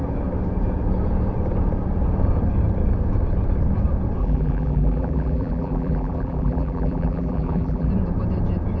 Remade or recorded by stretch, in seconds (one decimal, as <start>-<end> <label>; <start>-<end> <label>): 0.0-4.2 recorded; 4.2-7.9 remade; 7.9-8.8 recorded